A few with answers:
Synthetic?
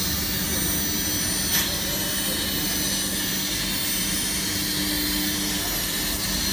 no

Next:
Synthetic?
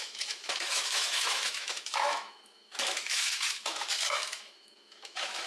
yes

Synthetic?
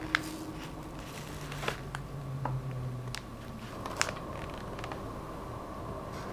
no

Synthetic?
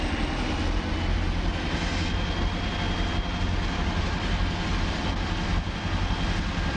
no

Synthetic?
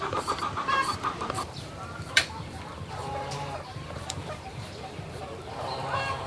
yes